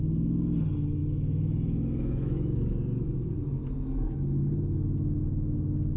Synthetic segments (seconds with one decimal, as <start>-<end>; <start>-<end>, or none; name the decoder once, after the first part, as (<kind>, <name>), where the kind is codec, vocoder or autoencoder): 1.0-2.8 (autoencoder, DAC-VAE)